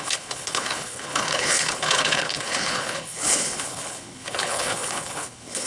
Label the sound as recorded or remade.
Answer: remade